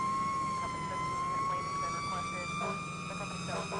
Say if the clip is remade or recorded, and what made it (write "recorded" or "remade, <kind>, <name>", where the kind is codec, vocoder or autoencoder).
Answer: recorded